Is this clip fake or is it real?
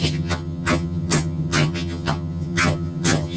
fake